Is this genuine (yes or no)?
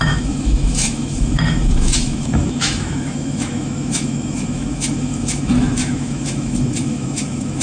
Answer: no